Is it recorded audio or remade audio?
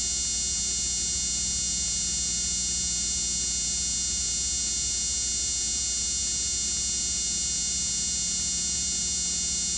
recorded